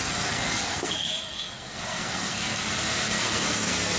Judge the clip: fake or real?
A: fake